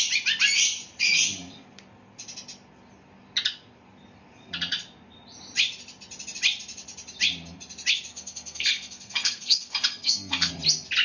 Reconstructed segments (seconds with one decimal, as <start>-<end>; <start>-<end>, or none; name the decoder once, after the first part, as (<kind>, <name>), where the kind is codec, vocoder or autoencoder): 8.1-10.5 (codec, SNAC)